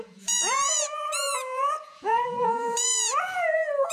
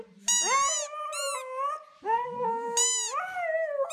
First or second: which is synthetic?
first